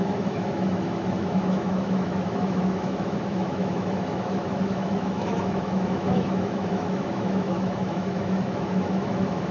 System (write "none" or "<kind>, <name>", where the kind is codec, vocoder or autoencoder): autoencoder, DAC-VAE